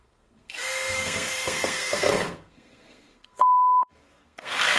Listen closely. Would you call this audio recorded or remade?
remade